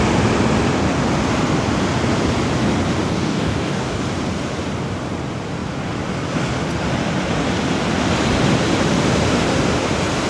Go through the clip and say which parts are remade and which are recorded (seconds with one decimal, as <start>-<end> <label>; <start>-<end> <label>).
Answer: 0.0-3.1 recorded; 3.1-4.0 remade; 4.0-10.3 recorded